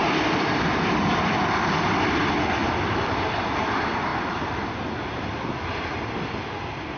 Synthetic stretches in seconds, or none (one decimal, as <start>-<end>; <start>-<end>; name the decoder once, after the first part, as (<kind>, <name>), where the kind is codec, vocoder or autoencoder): none